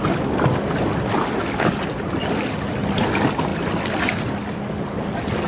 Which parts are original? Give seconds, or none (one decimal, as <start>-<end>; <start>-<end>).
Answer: 0.0-5.5